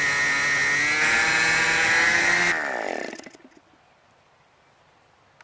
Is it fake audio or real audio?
real